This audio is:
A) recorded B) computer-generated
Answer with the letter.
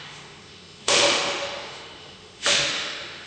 B